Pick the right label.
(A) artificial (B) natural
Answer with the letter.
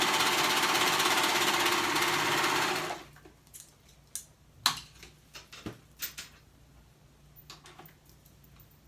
B